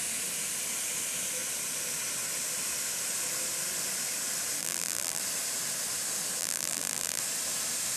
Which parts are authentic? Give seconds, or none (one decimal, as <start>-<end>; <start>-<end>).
0.0-4.6; 5.2-6.4; 7.2-8.0